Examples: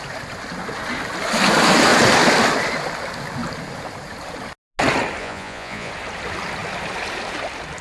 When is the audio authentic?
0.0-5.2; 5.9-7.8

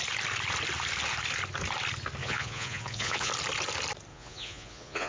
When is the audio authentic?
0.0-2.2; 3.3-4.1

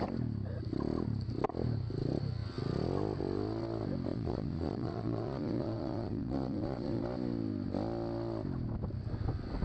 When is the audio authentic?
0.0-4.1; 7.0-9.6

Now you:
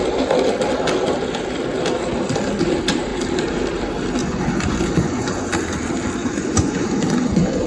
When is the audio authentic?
0.0-4.2; 5.5-6.2

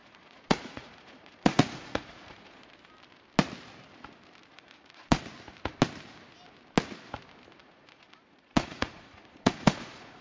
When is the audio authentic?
2.7-4.5; 5.2-7.6